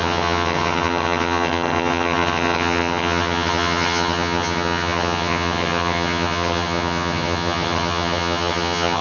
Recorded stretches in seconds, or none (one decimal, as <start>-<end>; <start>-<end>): none